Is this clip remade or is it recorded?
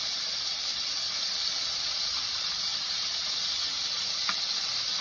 recorded